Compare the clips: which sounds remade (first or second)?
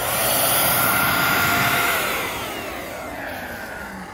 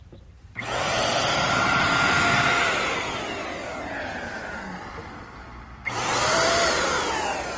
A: second